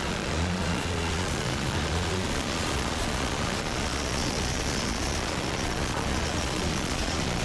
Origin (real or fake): fake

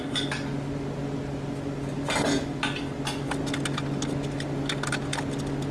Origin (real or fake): real